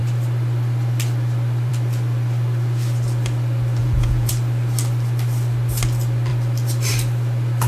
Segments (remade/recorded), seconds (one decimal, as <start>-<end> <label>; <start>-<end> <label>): 0.0-3.8 recorded; 3.8-4.3 remade; 4.3-7.7 recorded